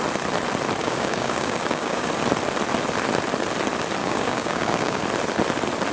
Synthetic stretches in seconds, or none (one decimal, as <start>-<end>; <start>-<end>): 0.8-2.1; 4.0-5.0